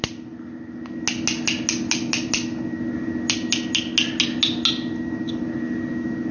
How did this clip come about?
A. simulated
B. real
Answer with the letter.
B